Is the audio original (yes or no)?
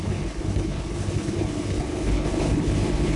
no